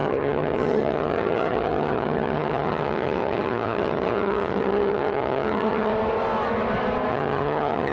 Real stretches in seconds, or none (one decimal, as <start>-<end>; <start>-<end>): 5.9-7.1